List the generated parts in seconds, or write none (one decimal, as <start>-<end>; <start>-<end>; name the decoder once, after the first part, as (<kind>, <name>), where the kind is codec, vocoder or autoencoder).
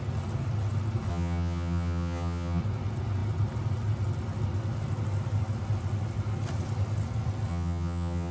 1.1-2.6 (vocoder, HiFi-GAN); 7.5-8.3